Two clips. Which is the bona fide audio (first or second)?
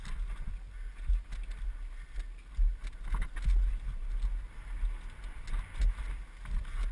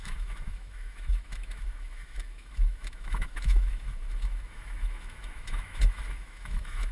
first